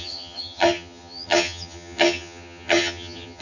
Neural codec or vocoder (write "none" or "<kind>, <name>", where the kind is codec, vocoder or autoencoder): vocoder, HiFi-GAN